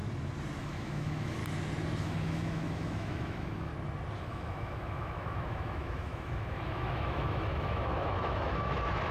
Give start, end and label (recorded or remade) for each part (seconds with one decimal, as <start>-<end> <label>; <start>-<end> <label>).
0.0-0.6 recorded; 0.6-1.4 remade; 1.4-2.0 recorded; 2.0-3.7 remade; 3.7-4.2 recorded; 4.2-9.1 remade